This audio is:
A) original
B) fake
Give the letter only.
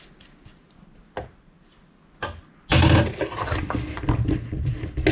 A